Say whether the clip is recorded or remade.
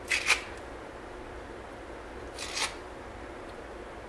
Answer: recorded